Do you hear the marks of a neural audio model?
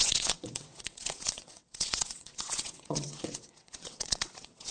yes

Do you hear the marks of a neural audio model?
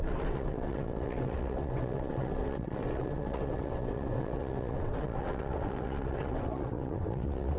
yes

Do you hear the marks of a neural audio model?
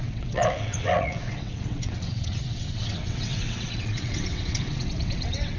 yes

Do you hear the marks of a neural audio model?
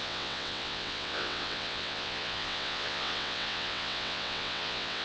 yes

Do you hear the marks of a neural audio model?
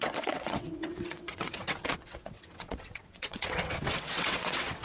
yes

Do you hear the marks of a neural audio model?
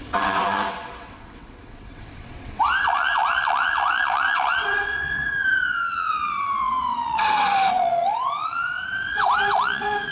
yes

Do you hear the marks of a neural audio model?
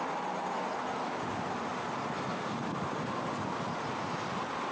no